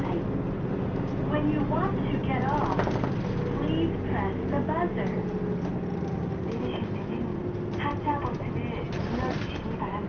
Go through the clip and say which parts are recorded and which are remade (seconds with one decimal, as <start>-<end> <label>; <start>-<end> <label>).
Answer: 0.0-10.1 recorded